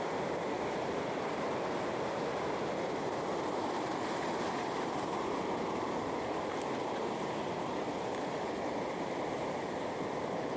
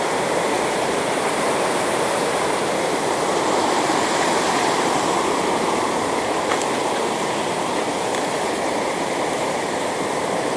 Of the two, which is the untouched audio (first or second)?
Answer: first